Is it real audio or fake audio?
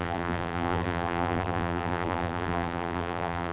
fake